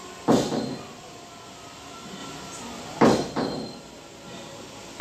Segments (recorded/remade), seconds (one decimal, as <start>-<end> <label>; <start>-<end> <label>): 0.0-5.0 recorded